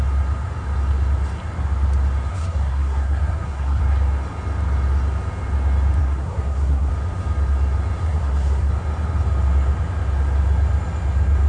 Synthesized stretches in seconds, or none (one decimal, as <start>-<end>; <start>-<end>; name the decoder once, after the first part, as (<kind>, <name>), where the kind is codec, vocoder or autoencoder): 2.3-3.8 (codec, SNAC); 6.0-6.9; 8.0-8.7